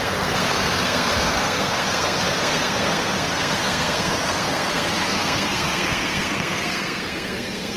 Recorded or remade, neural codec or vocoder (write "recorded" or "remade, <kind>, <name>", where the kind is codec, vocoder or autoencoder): remade, codec, SNAC